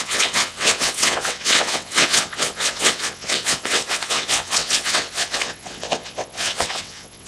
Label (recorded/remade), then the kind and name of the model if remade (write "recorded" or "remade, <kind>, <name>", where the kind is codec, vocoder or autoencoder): remade, vocoder, WaveNeXt